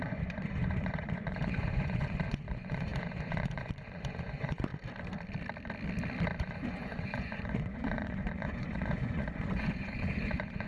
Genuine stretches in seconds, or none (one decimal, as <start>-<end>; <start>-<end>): 4.7-6.4